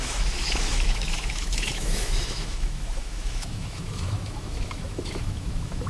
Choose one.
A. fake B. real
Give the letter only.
A